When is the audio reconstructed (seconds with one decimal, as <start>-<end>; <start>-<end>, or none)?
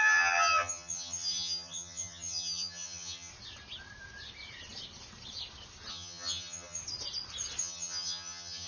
0.0-3.3; 5.9-6.8; 7.6-8.7